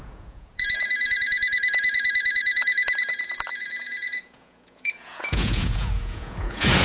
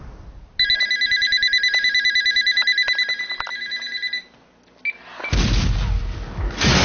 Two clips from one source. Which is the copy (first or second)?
first